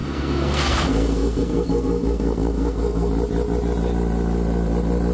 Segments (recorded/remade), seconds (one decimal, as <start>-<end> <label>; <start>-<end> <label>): 0.0-3.1 remade; 3.1-5.1 recorded